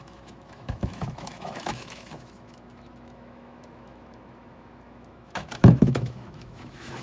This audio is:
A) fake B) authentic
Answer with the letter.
A